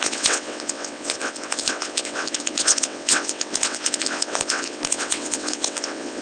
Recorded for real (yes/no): no